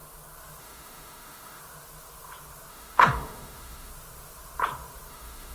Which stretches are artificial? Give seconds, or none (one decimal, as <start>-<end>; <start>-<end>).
0.6-1.6; 2.7-3.9; 5.1-5.5